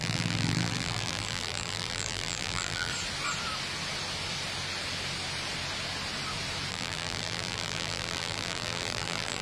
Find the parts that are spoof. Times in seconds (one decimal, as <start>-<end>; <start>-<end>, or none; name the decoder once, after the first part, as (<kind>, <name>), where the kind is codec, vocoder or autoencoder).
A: 0.0-2.9 (vocoder, BigVGAN v2); 6.7-9.4